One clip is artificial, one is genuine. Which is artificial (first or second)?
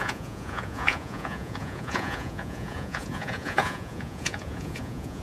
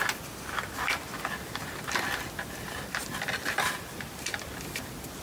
first